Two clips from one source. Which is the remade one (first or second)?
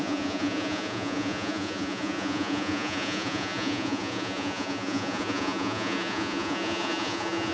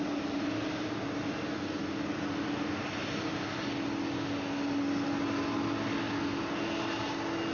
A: first